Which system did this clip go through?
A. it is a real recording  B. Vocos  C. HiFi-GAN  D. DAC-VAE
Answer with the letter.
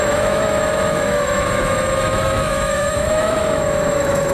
D